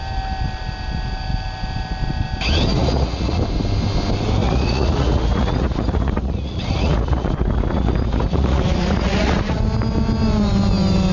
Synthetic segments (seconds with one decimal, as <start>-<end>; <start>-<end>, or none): 2.7-3.4; 4.4-9.6